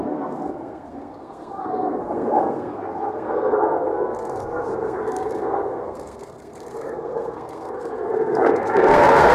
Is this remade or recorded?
remade